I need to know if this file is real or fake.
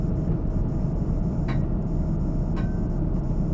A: real